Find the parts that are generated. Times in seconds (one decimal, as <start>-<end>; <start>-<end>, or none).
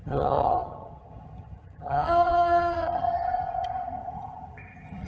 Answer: 0.0-5.1